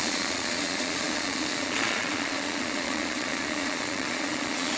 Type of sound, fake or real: fake